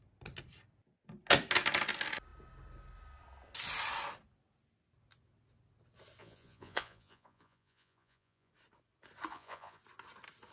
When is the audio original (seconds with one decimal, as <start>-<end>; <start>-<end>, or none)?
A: 0.0-6.2; 8.5-9.3; 9.8-10.5